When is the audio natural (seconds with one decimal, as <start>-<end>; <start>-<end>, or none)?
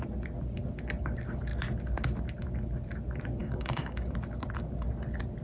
0.0-3.4; 4.1-5.4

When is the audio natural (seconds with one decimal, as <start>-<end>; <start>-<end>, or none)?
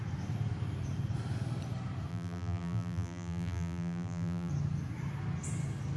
0.0-2.1; 4.5-6.0